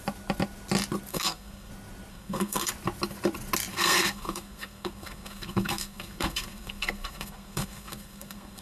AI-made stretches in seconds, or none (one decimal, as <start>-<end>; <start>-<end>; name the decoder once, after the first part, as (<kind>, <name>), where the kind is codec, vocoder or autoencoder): 1.1-1.7 (codec, SNAC); 2.1-2.7; 3.7-8.6

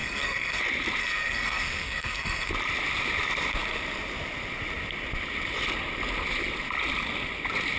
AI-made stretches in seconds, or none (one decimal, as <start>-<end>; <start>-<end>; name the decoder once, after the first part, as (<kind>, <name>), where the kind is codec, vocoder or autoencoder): 0.0-0.6 (codec, SNAC); 1.0-2.5

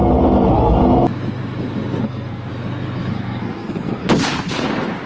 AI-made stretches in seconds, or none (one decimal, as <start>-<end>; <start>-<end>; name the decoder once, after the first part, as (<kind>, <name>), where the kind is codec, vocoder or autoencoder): 2.0-2.5 (codec, SNAC); 3.1-4.0

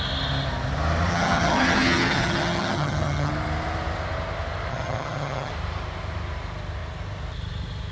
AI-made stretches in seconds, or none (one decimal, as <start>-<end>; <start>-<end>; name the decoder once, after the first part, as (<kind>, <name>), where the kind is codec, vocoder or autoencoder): 1.1-3.3 (vocoder, HiFi-GAN); 4.7-5.5

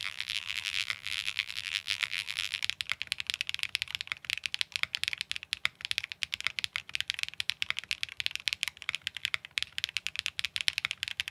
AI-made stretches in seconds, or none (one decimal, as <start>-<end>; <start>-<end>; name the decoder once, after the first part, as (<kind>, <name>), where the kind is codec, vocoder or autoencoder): 0.0-2.6 (vocoder, BigVGAN v2)

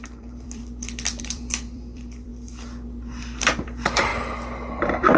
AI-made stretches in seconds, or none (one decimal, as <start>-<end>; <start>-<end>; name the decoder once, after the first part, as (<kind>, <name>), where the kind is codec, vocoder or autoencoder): 0.0-0.6 (vocoder, BigVGAN v2); 1.2-2.3; 3.4-4.1; 4.8-5.2

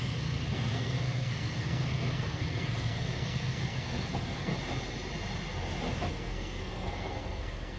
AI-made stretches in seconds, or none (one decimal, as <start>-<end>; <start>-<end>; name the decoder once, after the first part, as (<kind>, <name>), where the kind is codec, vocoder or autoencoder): 0.0-4.5 (codec, SNAC); 6.1-7.8